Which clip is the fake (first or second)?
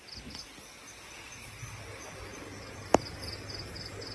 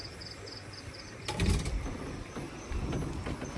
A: second